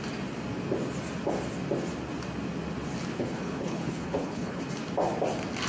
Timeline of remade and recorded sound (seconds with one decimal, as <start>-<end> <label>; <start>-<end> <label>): 0.0-3.1 recorded; 3.1-4.6 remade; 4.6-5.7 recorded